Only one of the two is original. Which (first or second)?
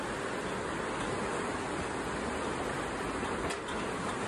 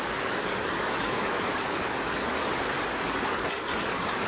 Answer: first